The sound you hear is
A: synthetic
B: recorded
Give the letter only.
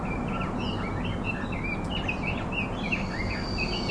B